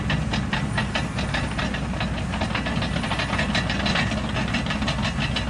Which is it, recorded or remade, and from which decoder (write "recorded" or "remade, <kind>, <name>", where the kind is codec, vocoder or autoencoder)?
recorded